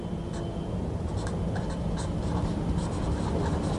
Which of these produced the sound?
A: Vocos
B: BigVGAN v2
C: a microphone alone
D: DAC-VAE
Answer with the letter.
C